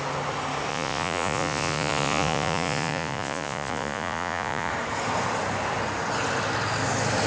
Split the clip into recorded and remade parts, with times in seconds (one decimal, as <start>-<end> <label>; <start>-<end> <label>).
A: 0.0-0.7 recorded; 0.7-4.7 remade; 4.7-7.3 recorded